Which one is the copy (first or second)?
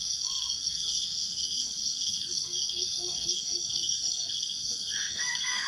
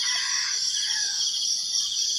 first